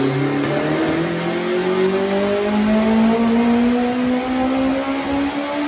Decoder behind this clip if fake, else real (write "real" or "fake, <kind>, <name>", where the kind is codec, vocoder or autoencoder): real